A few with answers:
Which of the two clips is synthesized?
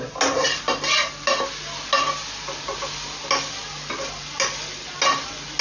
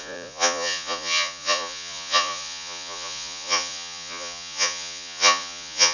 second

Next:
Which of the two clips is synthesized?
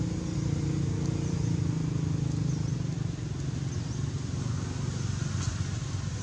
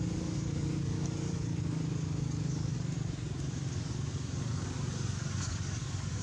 second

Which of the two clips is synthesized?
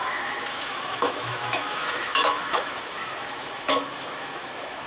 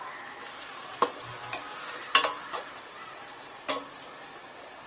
first